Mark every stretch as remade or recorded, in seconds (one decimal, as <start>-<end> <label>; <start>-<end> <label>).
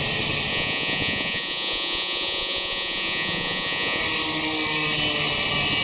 0.0-0.5 recorded; 0.5-4.0 remade; 4.0-5.8 recorded